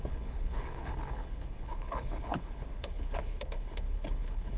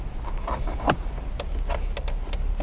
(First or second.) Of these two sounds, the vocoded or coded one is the first